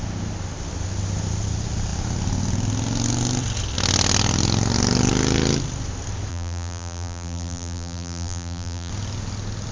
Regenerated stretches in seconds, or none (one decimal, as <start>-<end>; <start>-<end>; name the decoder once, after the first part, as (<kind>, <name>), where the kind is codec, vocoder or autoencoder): 6.3-8.9 (vocoder, BigVGAN v2)